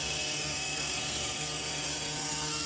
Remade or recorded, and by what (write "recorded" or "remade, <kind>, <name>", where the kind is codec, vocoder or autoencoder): remade, codec, SNAC